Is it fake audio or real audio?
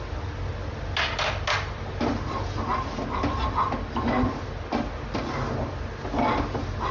real